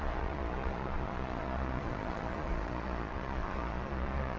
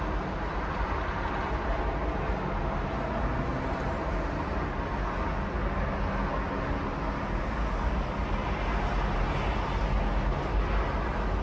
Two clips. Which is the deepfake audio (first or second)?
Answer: first